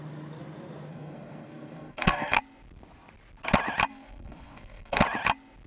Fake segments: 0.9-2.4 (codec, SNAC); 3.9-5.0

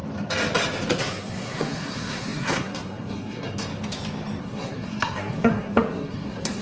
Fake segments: 0.9-3.7 (codec, SNAC); 4.4-6.6

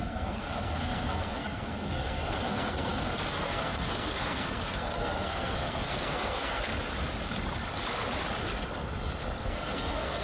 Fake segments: 0.0-6.7 (codec, SNAC); 9.4-10.2

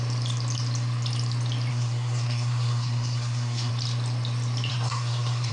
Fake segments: 1.7-3.7 (codec, SNAC); 4.7-5.5

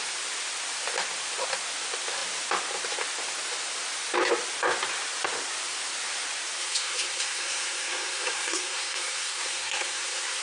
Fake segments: 6.6-10.4 (codec, SNAC)

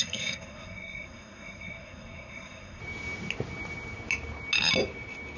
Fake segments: 0.0-2.8 (codec, SNAC)

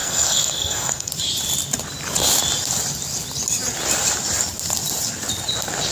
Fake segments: 0.0-1.1 (codec, SNAC)

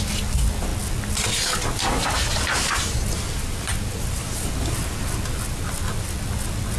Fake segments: none